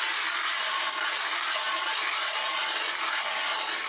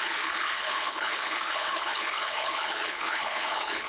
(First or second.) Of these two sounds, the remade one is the second